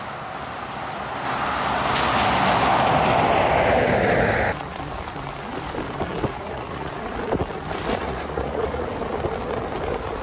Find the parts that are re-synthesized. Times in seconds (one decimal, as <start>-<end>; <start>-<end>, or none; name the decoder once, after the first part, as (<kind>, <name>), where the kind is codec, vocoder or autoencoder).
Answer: 6.3-6.9 (vocoder, Vocos); 8.0-8.9